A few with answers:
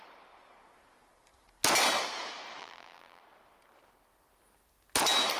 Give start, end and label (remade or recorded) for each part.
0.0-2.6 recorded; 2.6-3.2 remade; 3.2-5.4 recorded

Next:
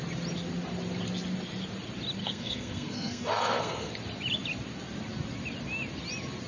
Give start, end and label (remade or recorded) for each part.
0.0-2.2 recorded; 2.2-3.9 remade; 3.9-6.5 recorded

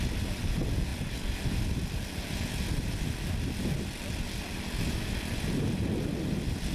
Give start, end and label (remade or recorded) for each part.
0.0-6.7 recorded